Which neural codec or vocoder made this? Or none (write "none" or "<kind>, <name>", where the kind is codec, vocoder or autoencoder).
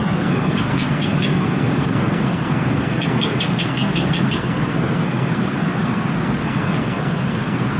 codec, SNAC